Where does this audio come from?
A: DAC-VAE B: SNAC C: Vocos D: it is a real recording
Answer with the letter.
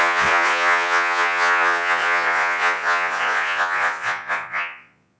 C